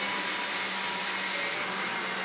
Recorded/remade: recorded